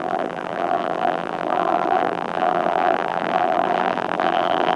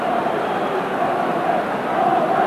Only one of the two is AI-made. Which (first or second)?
first